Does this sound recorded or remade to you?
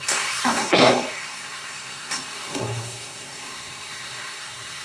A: remade